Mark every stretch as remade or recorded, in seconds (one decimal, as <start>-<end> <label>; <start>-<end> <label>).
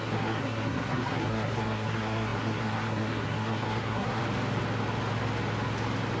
0.0-4.2 remade; 4.2-6.2 recorded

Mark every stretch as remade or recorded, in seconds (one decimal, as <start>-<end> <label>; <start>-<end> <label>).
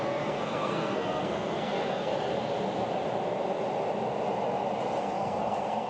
0.0-2.1 remade; 2.1-5.0 recorded; 5.0-5.9 remade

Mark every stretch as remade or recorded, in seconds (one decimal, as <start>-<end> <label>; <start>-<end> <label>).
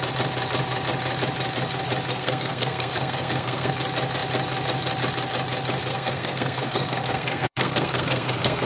0.0-2.1 recorded; 2.1-3.7 remade; 3.7-5.9 recorded; 5.9-8.7 remade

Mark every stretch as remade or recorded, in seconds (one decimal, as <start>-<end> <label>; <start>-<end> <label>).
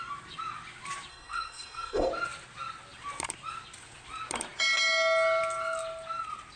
0.0-1.1 recorded; 1.1-2.1 remade; 2.1-6.6 recorded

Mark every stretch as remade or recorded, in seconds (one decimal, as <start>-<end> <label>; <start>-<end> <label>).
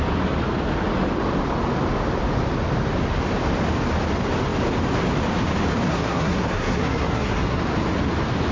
0.0-5.9 recorded; 5.9-7.6 remade; 7.6-8.5 recorded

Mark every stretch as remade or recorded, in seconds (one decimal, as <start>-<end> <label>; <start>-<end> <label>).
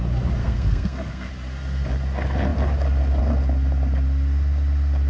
0.0-0.4 recorded; 0.4-1.3 remade; 1.3-5.1 recorded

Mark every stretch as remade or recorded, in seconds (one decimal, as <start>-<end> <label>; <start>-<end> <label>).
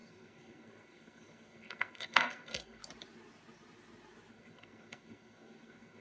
0.0-2.8 remade; 2.8-4.3 recorded; 4.3-6.0 remade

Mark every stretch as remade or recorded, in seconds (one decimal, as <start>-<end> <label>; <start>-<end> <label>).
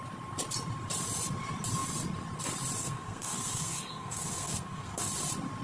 0.0-2.8 recorded; 2.8-5.1 remade; 5.1-5.6 recorded